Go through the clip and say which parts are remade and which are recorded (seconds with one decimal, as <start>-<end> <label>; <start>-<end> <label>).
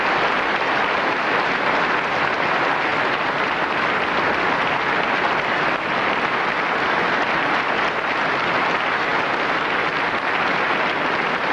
0.0-11.5 recorded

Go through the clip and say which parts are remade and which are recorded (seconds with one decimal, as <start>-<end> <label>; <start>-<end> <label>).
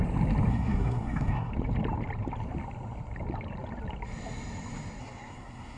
0.0-0.5 recorded; 0.5-1.5 remade; 1.5-5.0 recorded; 5.0-5.8 remade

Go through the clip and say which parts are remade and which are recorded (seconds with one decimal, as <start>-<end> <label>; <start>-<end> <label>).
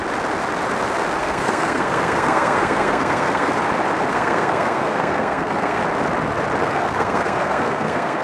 0.0-1.2 recorded; 1.2-3.5 remade; 3.5-4.1 recorded; 4.1-5.8 remade; 5.8-6.6 recorded; 6.6-8.2 remade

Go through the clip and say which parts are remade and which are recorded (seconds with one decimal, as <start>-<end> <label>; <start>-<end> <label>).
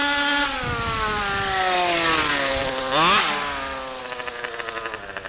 0.0-5.3 recorded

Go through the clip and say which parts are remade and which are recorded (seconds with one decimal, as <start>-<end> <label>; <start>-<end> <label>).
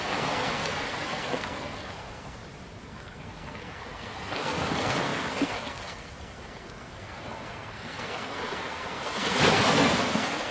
0.0-2.4 remade; 2.4-2.9 recorded; 2.9-10.5 remade